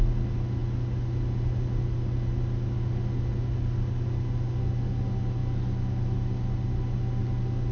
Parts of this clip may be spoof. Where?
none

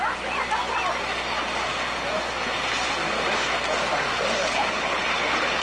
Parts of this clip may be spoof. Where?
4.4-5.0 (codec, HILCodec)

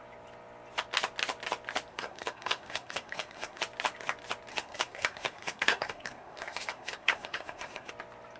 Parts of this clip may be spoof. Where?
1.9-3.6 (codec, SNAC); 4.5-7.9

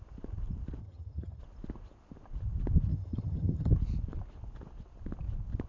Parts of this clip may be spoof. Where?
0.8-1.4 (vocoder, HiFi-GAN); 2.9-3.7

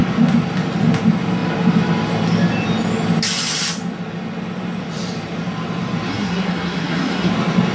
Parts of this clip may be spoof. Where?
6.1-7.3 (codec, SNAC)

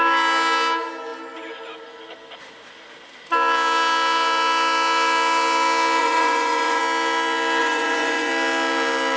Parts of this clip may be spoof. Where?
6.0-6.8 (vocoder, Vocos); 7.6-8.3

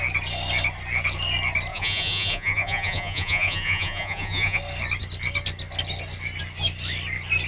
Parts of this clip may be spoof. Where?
1.7-4.6 (vocoder, Vocos)